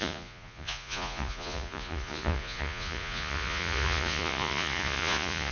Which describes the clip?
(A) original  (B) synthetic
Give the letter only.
B